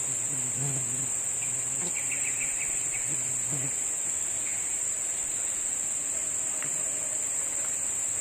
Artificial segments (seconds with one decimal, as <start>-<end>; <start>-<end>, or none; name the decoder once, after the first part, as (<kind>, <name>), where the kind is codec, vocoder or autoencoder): 1.8-3.3 (vocoder, BigVGAN v2); 4.7-5.7; 6.6-7.3